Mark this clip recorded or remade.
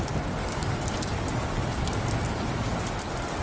recorded